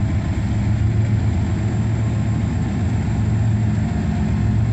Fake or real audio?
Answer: real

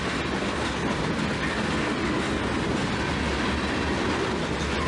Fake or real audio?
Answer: real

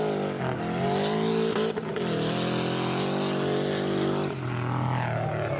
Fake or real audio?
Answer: real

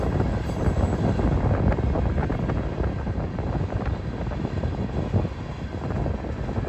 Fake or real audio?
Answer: real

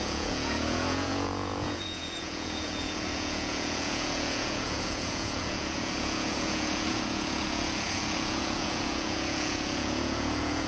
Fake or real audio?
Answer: fake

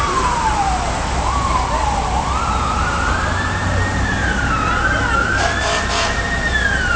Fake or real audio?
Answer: fake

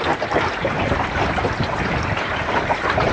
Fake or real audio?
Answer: real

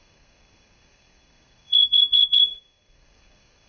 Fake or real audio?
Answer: fake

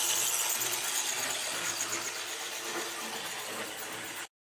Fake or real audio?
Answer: real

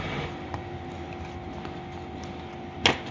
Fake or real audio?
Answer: real